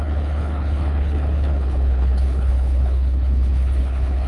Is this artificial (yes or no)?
yes